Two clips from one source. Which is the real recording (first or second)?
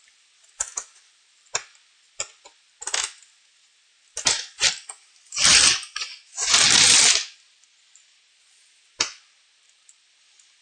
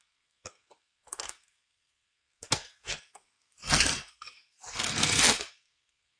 first